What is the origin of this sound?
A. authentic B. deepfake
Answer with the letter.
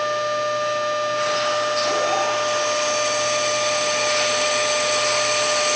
A